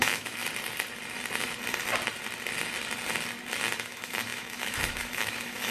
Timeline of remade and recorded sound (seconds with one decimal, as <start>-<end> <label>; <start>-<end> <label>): 0.0-0.4 remade; 0.4-3.8 recorded; 3.8-5.7 remade